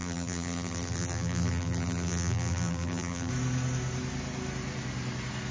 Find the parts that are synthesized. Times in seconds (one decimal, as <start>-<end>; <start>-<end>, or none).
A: 0.0-3.3